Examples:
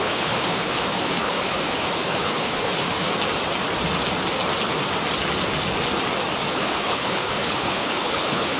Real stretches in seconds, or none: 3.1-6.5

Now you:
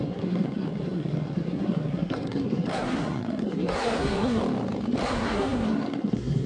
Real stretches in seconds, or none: 4.4-5.1

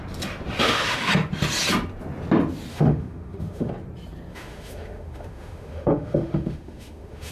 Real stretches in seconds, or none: 0.0-0.6; 1.1-2.7; 3.7-4.3

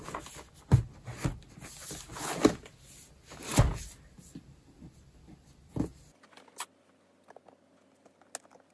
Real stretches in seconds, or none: 0.0-8.7

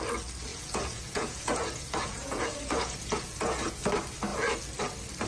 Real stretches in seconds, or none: 0.0-0.5; 3.7-5.3